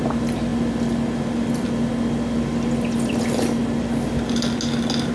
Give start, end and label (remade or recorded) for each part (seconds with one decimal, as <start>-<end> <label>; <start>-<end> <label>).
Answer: 0.0-5.1 recorded